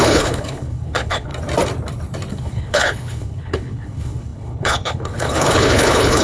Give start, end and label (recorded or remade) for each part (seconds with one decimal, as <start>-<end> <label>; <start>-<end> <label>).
0.0-1.3 remade; 1.3-2.3 recorded; 2.3-6.2 remade